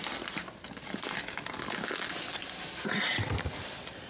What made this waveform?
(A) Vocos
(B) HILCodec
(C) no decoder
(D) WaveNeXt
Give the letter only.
C